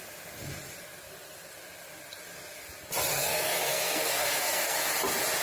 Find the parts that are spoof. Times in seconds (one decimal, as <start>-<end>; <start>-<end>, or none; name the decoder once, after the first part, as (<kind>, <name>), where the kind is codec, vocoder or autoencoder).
3.1-4.8 (codec, SNAC)